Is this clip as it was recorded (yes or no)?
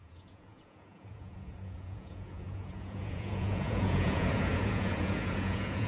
no